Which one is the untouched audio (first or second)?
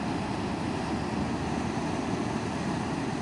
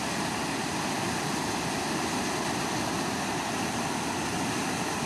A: second